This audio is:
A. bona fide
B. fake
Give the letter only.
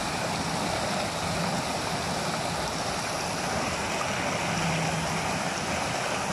A